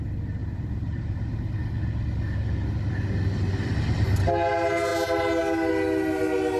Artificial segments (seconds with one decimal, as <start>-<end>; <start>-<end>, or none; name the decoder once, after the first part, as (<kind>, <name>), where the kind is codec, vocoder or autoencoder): 0.4-1.5 (vocoder, BigVGAN v2)